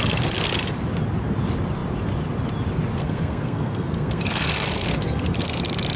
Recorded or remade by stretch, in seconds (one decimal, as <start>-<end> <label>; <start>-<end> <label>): 0.0-3.0 recorded; 3.0-5.6 remade; 5.6-6.0 recorded